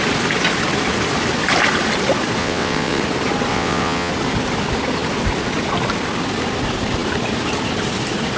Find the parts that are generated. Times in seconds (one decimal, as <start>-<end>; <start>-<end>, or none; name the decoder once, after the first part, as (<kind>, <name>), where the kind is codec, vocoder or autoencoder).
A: 2.4-3.0 (vocoder, WaveNeXt); 3.5-4.1